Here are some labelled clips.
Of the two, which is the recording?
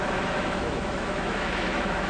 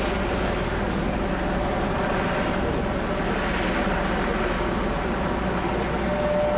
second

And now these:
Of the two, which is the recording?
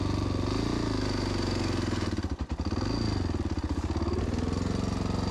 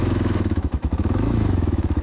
first